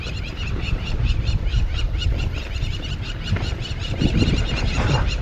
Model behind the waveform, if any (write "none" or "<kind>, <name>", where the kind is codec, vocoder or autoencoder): vocoder, BigVGAN v2